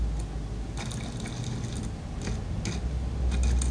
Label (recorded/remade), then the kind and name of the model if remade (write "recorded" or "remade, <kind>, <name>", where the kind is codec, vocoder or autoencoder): recorded